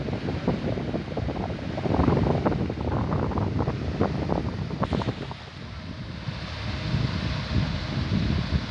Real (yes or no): yes